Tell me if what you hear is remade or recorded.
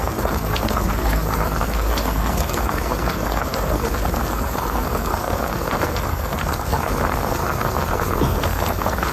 remade